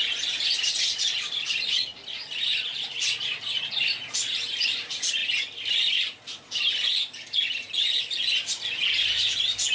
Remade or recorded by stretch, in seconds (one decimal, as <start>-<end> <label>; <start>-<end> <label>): 0.0-9.7 recorded